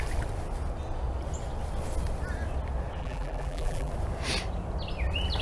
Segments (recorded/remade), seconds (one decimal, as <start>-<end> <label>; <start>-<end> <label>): 0.0-3.0 recorded; 3.0-3.9 remade; 3.9-5.4 recorded

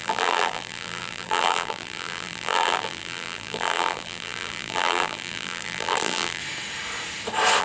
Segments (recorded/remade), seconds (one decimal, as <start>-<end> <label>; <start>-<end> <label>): 0.0-6.4 remade; 6.4-7.6 recorded

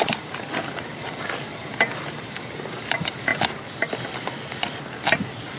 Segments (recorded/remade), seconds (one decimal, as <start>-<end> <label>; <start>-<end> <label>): 0.0-5.6 remade